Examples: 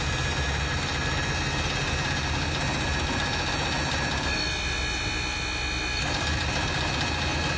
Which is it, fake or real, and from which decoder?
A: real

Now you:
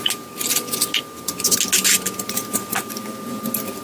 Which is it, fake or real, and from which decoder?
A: real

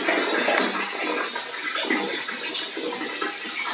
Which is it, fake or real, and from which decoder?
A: real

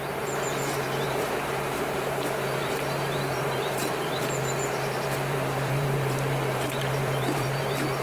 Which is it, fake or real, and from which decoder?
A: fake, vocoder, BigVGAN v2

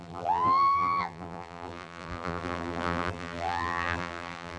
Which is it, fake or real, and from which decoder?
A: fake, vocoder, BigVGAN v2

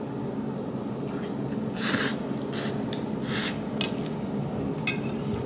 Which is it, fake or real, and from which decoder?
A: real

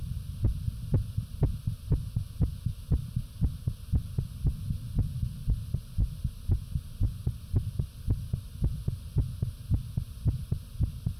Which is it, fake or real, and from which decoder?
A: real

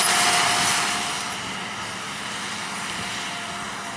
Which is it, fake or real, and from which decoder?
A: real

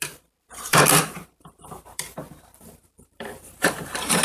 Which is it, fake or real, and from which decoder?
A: fake, vocoder, BigVGAN v2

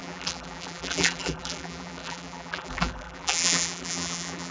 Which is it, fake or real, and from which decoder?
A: fake, vocoder, BigVGAN v2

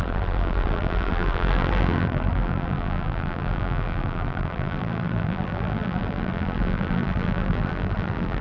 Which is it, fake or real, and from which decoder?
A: fake, vocoder, BigVGAN v2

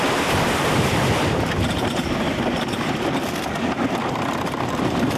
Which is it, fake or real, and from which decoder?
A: fake, vocoder, BigVGAN v2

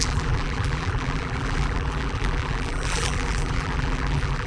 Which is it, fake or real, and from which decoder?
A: fake, vocoder, BigVGAN v2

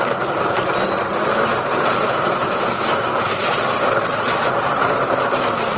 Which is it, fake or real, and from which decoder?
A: real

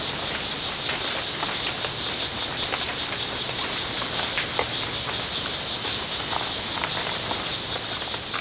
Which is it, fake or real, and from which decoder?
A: real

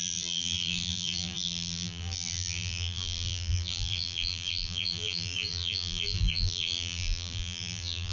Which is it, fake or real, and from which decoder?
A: fake, vocoder, BigVGAN v2